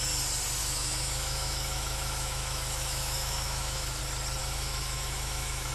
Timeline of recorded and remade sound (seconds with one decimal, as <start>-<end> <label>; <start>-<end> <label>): 0.0-0.6 recorded; 0.6-4.0 remade; 4.0-4.4 recorded; 4.4-5.7 remade

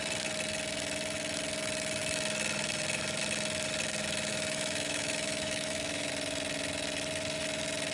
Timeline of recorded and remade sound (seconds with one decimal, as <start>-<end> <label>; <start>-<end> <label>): 0.0-4.3 recorded; 4.3-6.1 remade; 6.1-7.9 recorded

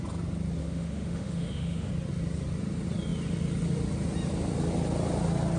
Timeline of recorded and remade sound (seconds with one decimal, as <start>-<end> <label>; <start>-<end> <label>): 0.0-0.6 recorded; 0.6-1.9 remade; 1.9-5.6 recorded